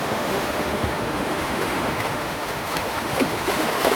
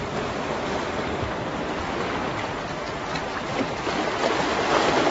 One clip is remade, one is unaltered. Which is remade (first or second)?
first